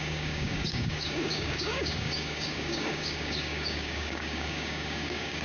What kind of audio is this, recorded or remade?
remade